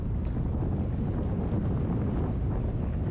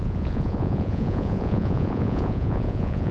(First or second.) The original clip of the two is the first